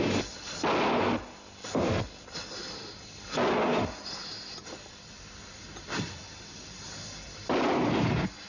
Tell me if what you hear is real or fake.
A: real